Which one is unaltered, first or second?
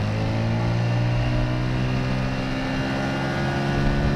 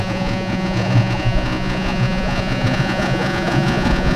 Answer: first